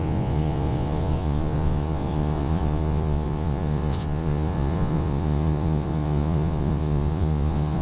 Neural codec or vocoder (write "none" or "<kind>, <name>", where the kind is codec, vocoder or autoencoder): vocoder, Vocos